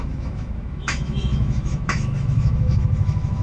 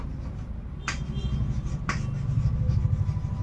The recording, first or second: second